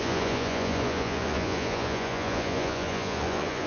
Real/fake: fake